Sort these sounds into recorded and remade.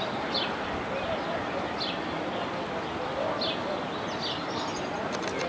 recorded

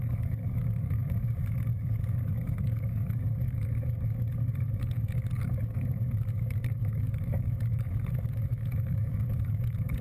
remade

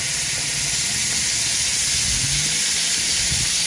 recorded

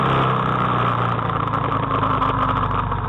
recorded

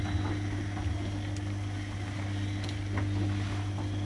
recorded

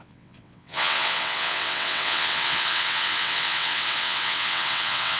remade